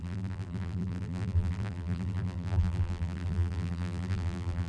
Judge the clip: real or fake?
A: fake